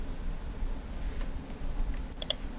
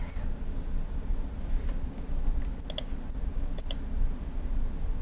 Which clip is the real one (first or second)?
second